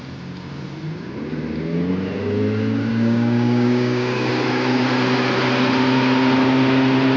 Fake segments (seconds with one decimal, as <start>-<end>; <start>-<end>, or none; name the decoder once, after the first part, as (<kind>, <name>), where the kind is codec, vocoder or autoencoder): 2.9-4.3 (codec, DAC)